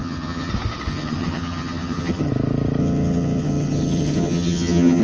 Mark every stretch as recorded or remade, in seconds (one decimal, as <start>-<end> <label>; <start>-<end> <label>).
0.0-0.5 remade; 0.5-0.9 recorded; 0.9-2.3 remade; 2.3-2.8 recorded; 2.8-5.0 remade